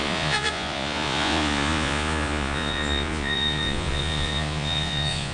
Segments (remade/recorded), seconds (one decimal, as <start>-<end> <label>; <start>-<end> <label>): 0.0-5.3 remade

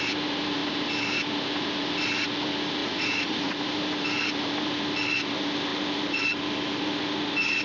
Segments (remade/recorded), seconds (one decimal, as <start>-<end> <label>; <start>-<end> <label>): 0.0-2.8 recorded; 2.8-3.6 remade; 3.6-7.6 recorded